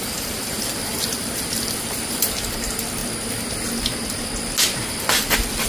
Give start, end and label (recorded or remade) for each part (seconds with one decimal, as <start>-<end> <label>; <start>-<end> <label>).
0.0-3.0 remade; 3.0-4.9 recorded; 4.9-5.7 remade